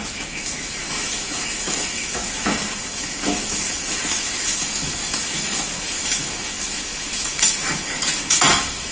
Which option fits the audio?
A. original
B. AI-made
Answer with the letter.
B